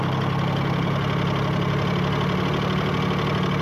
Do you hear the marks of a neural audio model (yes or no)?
no